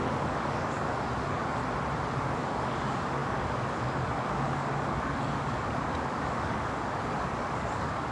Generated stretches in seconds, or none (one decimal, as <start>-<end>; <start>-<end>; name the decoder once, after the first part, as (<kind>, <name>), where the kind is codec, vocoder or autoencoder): 0.0-1.6 (codec, DAC); 2.2-8.1